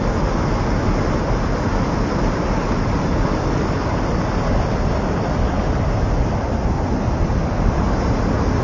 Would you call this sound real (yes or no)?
yes